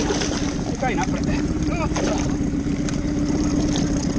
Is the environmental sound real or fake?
real